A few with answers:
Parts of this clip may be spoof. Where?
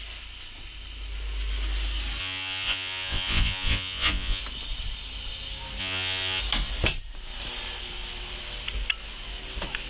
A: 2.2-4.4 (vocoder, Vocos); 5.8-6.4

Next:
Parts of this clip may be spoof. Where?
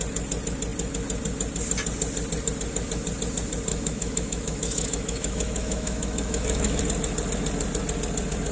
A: 3.7-6.8 (autoencoder, DAC-VAE)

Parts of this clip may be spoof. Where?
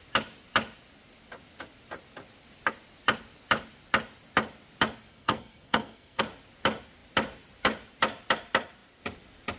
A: 5.1-6.2 (codec, SNAC)